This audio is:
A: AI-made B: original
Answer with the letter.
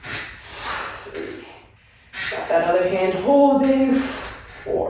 B